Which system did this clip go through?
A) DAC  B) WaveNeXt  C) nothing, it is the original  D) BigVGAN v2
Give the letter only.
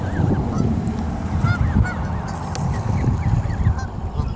C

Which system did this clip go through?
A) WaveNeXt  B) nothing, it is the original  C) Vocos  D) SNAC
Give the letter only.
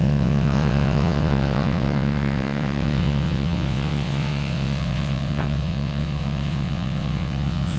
A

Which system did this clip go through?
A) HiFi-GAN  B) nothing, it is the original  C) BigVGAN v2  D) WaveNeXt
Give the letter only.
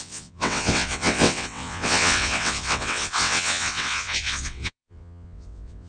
D